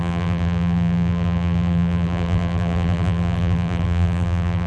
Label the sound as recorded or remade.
remade